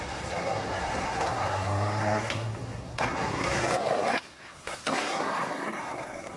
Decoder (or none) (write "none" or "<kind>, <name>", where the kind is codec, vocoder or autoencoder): codec, SNAC